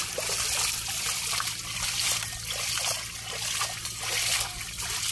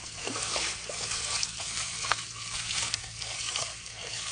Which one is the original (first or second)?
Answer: first